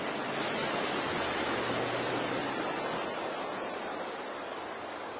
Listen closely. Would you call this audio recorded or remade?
recorded